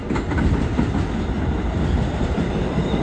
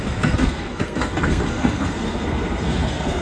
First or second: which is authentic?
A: first